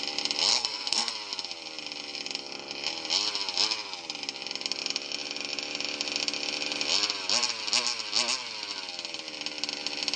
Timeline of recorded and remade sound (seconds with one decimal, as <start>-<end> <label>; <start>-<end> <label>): 0.0-0.5 recorded; 0.5-1.1 remade; 1.1-10.2 recorded